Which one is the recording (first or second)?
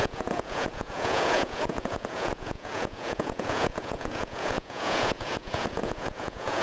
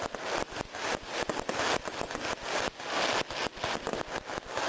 second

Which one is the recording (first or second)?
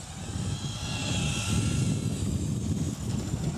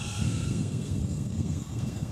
first